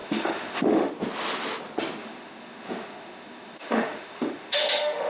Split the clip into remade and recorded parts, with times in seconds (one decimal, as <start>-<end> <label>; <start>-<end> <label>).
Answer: 0.0-0.9 remade; 0.9-2.0 recorded; 2.0-5.1 remade